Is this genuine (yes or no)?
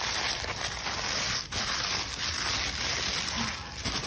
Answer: yes